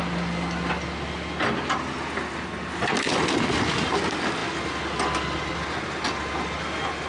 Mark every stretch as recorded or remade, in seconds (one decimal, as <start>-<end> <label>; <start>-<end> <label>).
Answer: 0.0-7.1 recorded